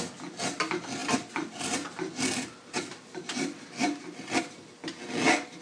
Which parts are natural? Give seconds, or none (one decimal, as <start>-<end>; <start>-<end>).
0.0-1.0; 4.4-5.6